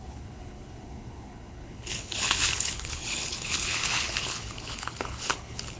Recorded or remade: remade